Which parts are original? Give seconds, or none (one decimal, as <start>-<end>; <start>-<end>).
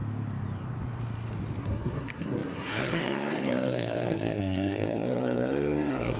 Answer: 0.0-1.6